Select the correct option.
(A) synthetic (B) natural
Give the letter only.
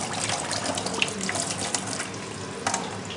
B